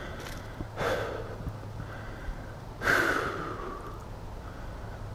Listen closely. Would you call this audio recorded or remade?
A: recorded